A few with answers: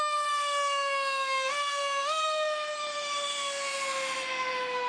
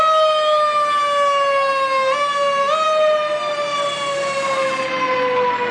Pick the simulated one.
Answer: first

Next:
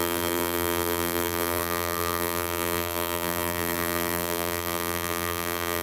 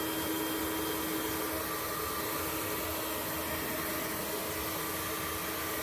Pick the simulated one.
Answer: first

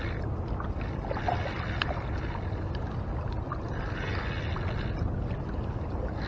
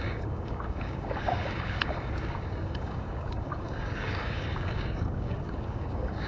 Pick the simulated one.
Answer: second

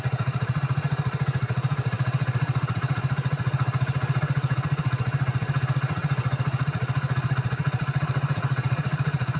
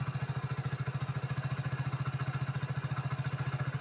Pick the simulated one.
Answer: first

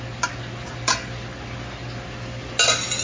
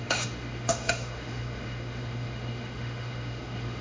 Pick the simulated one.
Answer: second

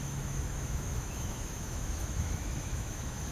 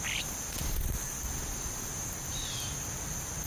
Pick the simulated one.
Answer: first